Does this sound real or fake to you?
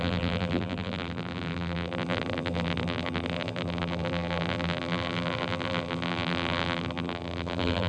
fake